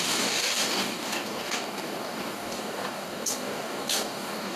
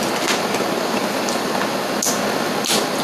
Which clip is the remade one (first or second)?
first